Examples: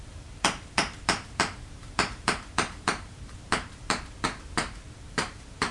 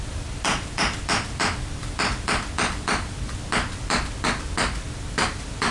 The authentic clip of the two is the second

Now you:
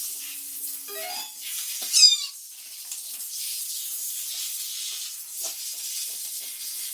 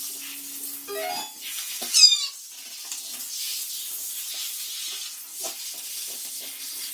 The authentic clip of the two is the second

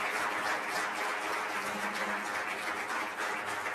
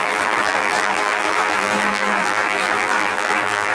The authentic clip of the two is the first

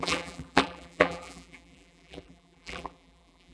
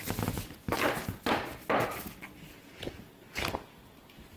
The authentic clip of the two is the second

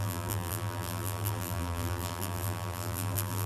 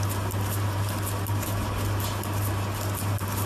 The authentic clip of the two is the second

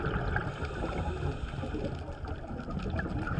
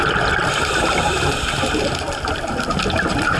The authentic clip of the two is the first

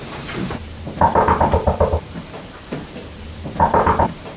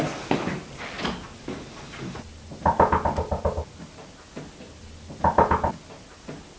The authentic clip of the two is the second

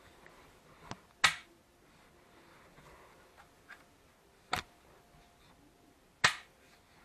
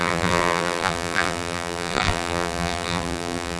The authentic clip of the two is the first